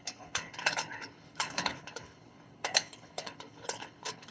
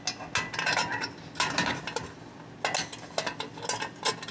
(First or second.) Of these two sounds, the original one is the second